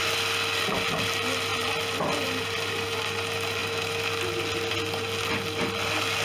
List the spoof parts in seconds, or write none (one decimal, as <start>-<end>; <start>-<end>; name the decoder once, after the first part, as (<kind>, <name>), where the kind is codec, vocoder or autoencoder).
none